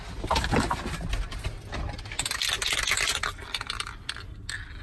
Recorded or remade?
recorded